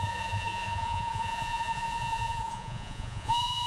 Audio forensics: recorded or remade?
remade